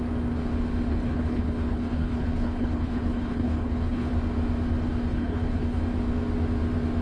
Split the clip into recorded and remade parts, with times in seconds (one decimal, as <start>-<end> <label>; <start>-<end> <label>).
0.0-0.9 recorded; 0.9-4.1 remade; 4.1-5.1 recorded; 5.1-5.8 remade; 5.8-7.0 recorded